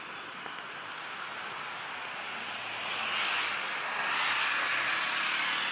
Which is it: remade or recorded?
recorded